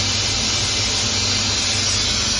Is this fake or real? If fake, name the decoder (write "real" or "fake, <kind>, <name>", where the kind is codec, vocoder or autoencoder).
real